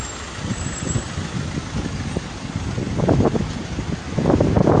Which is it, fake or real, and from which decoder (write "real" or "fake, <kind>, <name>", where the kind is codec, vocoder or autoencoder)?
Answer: real